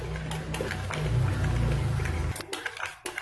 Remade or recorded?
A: recorded